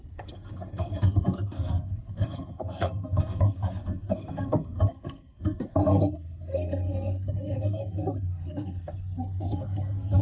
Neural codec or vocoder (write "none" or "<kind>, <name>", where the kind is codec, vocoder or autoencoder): codec, SNAC